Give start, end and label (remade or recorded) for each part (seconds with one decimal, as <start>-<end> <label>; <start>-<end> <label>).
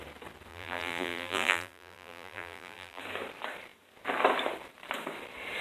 0.0-0.5 recorded; 0.5-3.0 remade; 3.0-5.6 recorded